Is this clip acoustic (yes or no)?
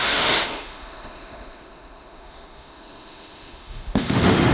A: no